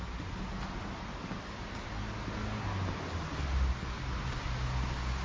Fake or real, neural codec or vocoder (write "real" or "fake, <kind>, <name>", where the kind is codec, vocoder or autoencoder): real